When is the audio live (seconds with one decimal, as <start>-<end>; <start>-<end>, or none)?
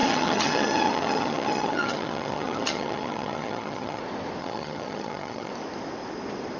4.0-4.4; 5.5-6.6